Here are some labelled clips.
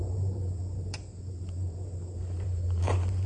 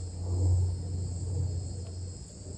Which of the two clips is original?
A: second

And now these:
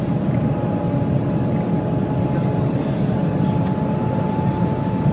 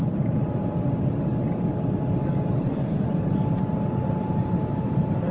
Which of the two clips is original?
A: first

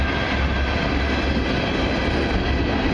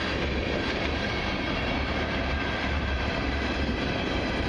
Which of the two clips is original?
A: first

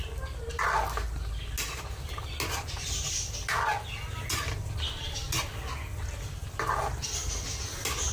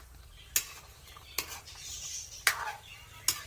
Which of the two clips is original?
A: first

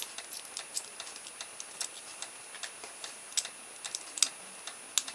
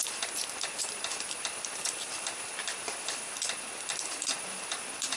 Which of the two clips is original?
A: first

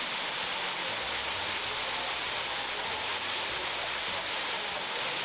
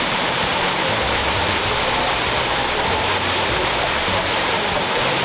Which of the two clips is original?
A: first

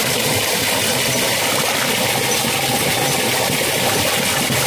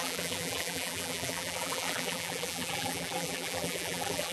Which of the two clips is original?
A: first